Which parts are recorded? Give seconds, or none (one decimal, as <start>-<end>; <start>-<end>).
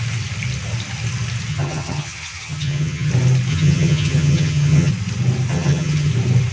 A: 0.0-1.5; 3.1-3.5; 4.9-5.5; 6.1-6.5